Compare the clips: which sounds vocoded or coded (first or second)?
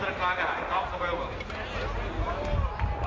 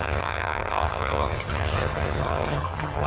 second